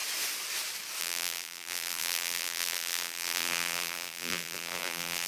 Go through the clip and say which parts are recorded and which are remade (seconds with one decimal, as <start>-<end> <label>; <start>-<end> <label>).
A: 0.0-1.0 recorded; 1.0-5.3 remade